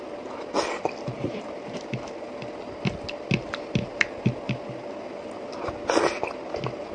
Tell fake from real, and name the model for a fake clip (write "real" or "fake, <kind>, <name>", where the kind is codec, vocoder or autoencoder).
real